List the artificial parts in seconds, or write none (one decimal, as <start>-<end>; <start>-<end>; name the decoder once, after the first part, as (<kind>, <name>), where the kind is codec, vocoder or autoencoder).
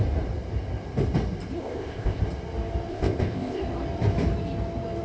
1.6-2.2 (codec, ZipCodec); 2.9-3.6